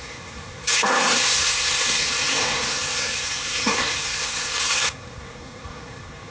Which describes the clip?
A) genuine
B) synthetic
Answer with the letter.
B